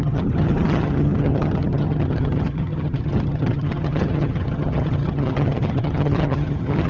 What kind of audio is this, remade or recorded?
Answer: remade